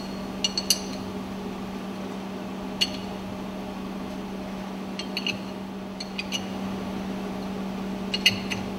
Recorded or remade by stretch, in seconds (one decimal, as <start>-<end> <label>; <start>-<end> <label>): 0.0-8.8 recorded